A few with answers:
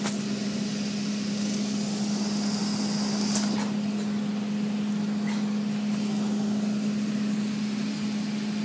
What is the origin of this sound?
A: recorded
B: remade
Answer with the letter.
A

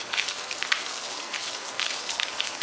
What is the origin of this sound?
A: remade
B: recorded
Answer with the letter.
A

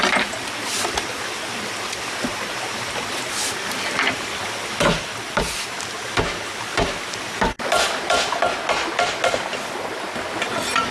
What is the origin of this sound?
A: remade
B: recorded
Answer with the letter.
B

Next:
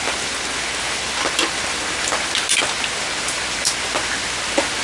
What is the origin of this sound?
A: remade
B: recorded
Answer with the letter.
B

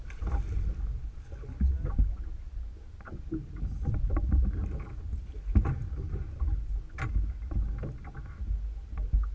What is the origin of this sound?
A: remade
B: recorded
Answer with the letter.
B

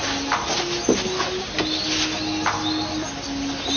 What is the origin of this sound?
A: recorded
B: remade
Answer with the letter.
A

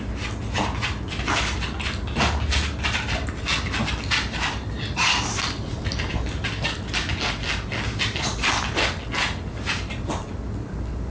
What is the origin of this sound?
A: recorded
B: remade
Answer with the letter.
A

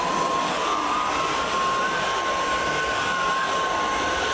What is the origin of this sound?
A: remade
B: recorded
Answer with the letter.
B